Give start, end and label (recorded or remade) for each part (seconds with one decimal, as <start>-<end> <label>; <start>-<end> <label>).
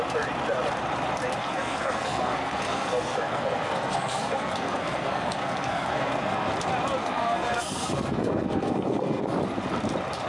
0.0-1.4 recorded; 1.4-6.5 remade; 6.5-7.0 recorded; 7.0-9.2 remade; 9.2-10.3 recorded